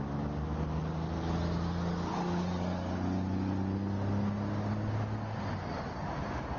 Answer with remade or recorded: recorded